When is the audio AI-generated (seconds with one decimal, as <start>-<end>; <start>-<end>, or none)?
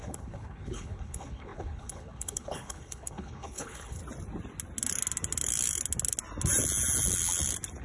0.0-4.0